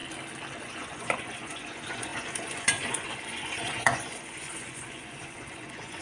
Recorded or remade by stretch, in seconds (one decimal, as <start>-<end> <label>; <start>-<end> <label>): 0.0-0.6 recorded; 0.6-6.0 remade